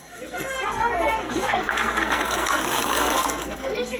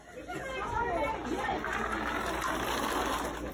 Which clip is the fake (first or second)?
first